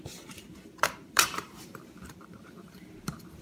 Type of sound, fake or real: fake